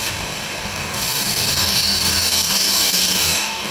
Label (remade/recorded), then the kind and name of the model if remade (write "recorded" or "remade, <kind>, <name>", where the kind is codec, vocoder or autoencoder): remade, codec, DAC